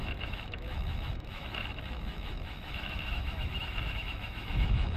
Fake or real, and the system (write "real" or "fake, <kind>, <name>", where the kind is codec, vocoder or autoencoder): fake, autoencoder, DAC-VAE